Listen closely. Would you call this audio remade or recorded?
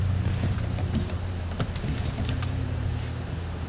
remade